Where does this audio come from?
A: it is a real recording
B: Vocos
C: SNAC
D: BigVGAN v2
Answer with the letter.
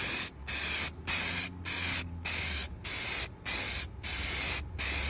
A